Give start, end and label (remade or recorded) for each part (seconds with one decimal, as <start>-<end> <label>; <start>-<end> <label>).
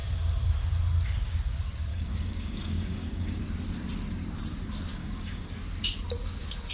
0.0-1.9 recorded; 1.9-3.4 remade; 3.4-4.9 recorded; 4.9-5.5 remade; 5.5-6.7 recorded